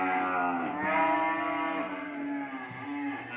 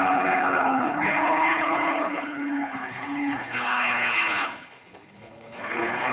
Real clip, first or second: first